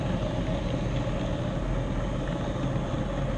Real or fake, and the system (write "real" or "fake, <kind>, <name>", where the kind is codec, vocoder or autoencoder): real